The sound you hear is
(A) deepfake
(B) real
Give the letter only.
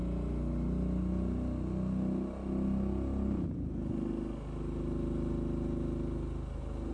B